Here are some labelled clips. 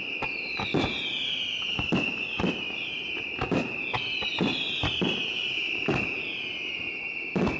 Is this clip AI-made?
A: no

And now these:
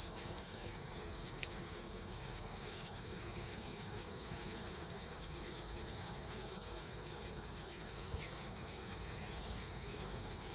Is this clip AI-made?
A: yes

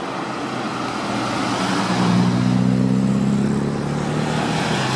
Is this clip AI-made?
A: no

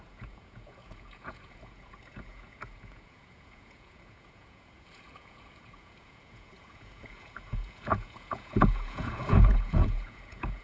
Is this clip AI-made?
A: yes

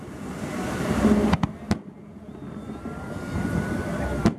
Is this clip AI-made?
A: no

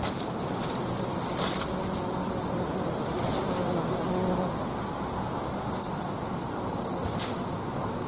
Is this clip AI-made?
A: no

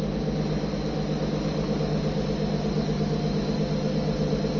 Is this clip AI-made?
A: no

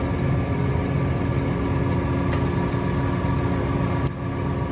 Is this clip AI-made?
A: no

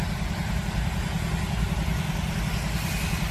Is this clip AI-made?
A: no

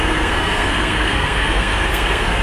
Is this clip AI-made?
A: yes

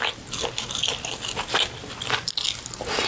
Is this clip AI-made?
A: no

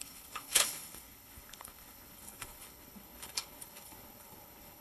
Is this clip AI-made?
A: yes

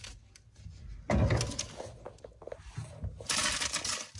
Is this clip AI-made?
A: no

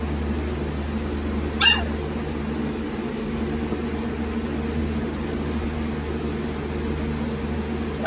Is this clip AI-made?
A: no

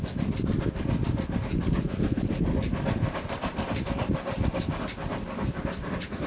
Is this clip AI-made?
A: no